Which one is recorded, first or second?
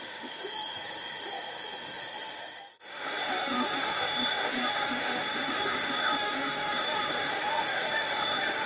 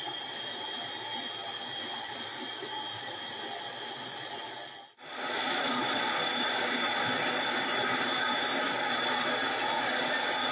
second